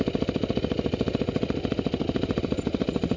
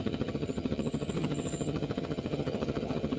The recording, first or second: first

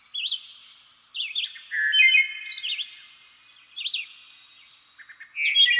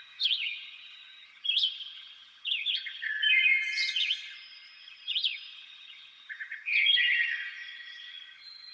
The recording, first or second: first